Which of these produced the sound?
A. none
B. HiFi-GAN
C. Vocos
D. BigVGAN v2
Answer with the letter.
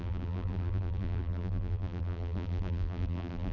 D